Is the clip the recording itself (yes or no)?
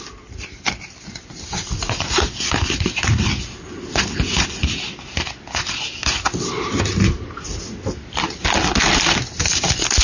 yes